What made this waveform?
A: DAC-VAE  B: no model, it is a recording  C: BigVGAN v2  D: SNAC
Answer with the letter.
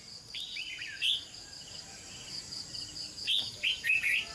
C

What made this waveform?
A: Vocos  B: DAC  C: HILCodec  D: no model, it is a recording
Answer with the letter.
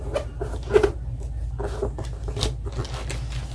D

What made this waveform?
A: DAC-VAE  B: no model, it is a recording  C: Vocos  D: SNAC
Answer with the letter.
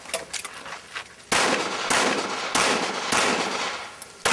B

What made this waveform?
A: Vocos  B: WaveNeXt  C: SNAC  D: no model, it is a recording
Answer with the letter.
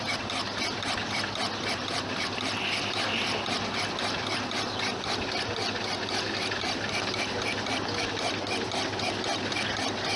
D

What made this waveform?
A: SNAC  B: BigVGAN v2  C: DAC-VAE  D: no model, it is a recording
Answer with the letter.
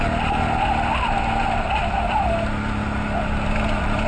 D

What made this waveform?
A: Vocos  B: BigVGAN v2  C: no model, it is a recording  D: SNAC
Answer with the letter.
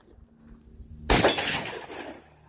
C